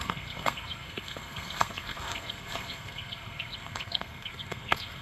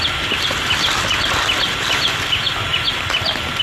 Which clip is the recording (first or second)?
second